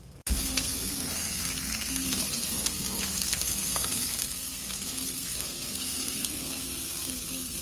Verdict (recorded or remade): remade